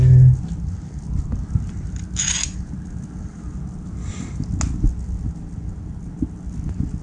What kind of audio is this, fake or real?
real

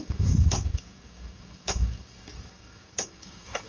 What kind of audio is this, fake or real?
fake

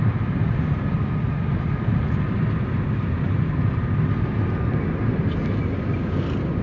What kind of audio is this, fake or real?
real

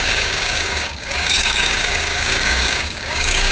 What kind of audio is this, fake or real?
fake